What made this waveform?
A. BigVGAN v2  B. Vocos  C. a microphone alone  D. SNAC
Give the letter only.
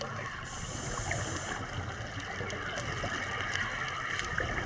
C